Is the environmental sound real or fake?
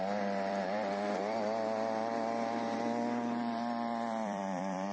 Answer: fake